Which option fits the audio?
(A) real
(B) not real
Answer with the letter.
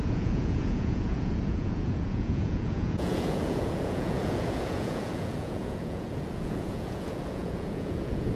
B